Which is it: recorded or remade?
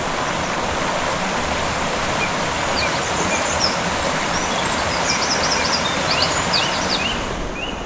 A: recorded